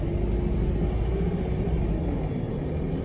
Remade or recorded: recorded